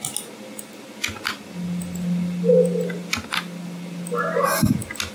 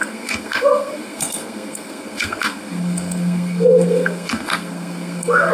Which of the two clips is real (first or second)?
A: first